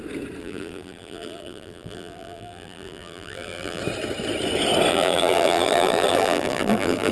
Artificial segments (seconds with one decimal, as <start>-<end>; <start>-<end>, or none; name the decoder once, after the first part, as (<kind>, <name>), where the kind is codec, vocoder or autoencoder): 0.4-3.8 (vocoder, BigVGAN v2); 4.9-7.1

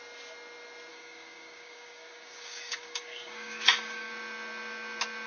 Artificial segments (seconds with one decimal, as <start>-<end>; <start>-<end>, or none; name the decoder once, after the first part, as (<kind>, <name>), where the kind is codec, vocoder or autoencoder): 0.9-4.1 (codec, DAC)

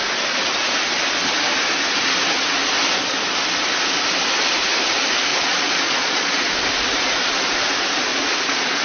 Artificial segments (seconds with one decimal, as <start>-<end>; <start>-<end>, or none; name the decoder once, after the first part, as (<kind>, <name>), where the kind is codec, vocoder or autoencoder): 5.3-6.5 (vocoder, Vocos); 8.1-8.8

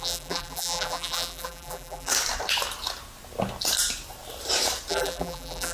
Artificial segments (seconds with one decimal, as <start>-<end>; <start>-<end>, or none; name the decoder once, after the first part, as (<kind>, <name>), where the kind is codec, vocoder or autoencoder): 0.0-2.1 (vocoder, BigVGAN v2); 4.9-5.7

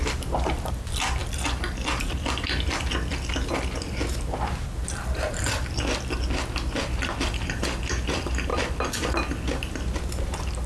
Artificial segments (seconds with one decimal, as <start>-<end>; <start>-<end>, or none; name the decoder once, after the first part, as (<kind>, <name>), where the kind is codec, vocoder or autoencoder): none

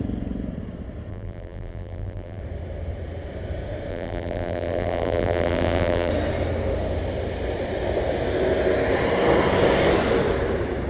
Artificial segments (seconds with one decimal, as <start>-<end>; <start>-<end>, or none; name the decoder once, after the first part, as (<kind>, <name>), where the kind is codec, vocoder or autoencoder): 1.1-2.4 (vocoder, BigVGAN v2); 3.9-6.1

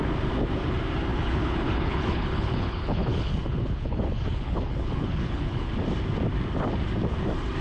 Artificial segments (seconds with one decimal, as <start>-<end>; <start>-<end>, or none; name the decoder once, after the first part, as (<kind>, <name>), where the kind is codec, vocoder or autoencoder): 1.1-5.7 (codec, HILCodec)

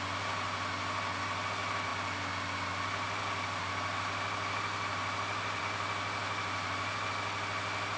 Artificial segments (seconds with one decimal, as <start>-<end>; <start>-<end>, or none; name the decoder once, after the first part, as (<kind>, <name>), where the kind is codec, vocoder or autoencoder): 1.9-5.6 (vocoder, BigVGAN v2); 6.2-7.1